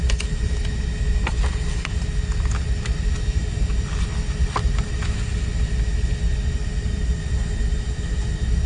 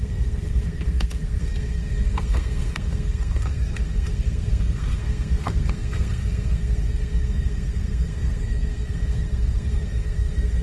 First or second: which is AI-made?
second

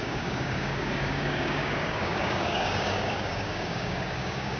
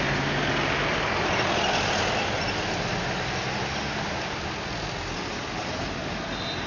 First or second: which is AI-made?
first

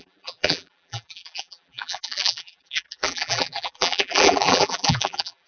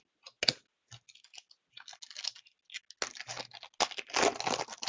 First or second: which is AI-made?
first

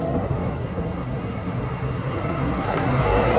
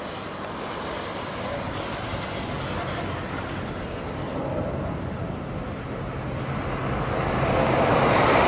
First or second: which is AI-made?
first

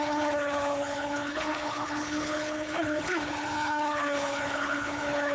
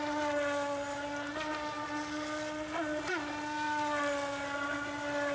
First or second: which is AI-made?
first